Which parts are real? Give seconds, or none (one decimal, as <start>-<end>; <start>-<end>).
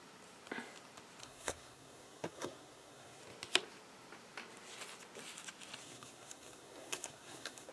0.0-1.2; 3.2-5.8